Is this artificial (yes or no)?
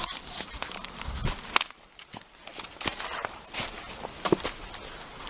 no